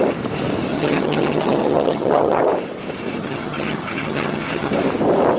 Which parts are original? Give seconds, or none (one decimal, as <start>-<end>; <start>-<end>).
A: 0.0-0.7; 2.4-3.2; 4.7-5.4